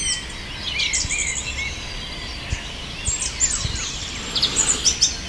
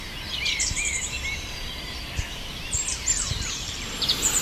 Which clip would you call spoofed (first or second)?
second